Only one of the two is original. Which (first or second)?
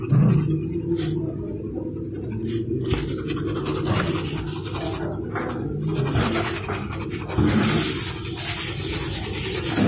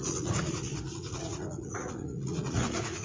first